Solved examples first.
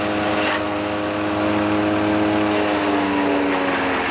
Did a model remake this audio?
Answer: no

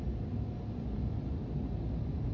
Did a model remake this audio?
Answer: no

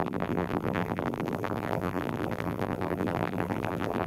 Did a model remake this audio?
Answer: yes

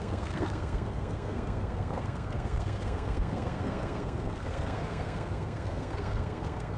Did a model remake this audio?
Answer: yes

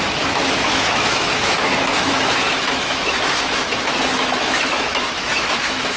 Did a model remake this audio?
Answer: yes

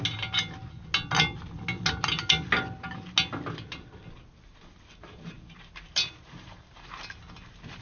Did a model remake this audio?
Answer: no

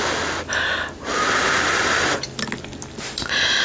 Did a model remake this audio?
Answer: no